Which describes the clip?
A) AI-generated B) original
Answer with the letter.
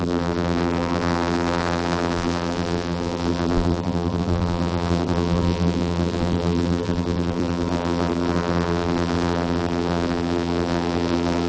A